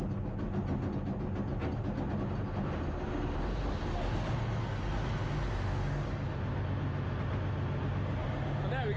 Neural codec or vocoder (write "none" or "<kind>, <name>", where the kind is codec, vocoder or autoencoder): none